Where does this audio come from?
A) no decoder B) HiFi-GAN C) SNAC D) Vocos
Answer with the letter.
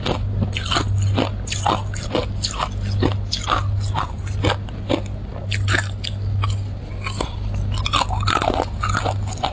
A